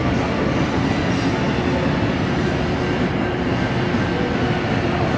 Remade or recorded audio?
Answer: recorded